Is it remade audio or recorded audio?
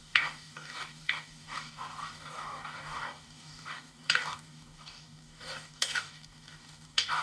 remade